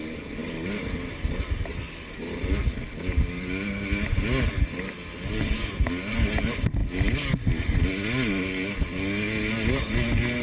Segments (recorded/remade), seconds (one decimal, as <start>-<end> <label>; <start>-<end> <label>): 0.0-10.4 recorded